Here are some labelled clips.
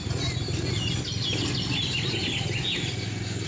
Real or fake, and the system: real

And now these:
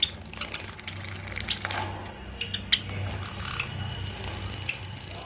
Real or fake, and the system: real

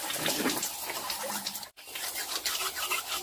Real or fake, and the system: fake, vocoder, BigVGAN v2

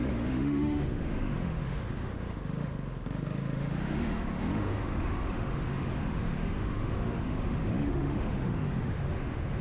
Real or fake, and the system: fake, autoencoder, DAC-VAE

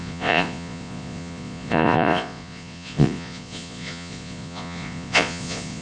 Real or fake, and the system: fake, vocoder, Vocos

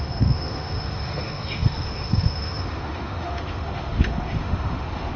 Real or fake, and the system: fake, autoencoder, DAC-VAE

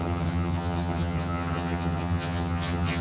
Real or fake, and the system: fake, vocoder, HiFi-GAN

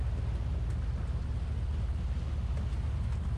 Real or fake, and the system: real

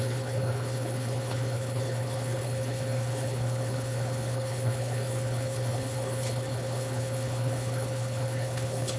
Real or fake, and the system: fake, codec, HILCodec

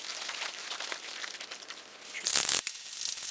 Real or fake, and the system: real